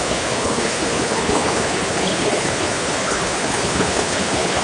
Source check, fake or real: fake